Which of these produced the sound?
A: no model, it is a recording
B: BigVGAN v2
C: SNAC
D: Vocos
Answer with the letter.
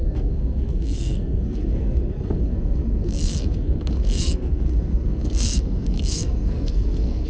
C